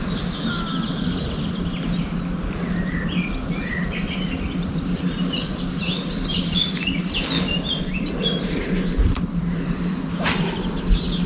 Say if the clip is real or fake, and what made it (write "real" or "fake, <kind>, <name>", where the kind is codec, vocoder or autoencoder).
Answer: real